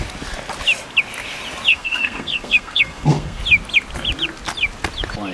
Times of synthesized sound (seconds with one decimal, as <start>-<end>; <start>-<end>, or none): 1.7-3.4